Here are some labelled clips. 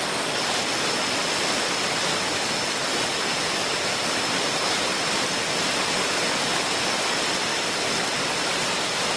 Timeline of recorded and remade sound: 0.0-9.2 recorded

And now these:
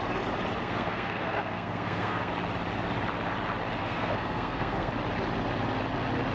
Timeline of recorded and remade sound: 0.0-0.6 recorded; 0.6-2.3 remade; 2.3-3.8 recorded; 3.8-4.9 remade; 4.9-6.3 recorded

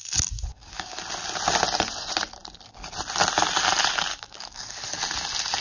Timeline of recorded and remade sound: 0.0-0.5 recorded; 0.5-1.0 remade; 1.0-4.1 recorded; 4.1-5.0 remade; 5.0-5.6 recorded

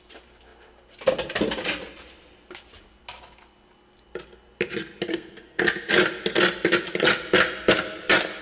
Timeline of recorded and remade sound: 0.0-5.1 recorded; 5.1-5.6 remade; 5.6-8.4 recorded

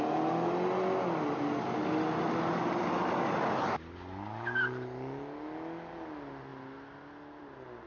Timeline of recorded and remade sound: 0.0-7.9 recorded

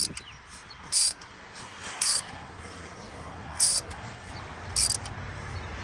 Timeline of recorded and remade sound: 0.0-0.8 recorded; 0.8-4.3 remade; 4.3-5.8 recorded

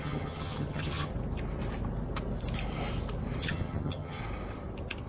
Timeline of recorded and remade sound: 0.0-1.1 remade; 1.1-3.4 recorded; 3.4-4.2 remade; 4.2-5.1 recorded

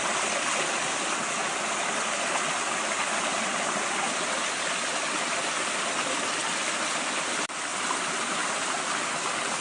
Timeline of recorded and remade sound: 0.0-9.6 recorded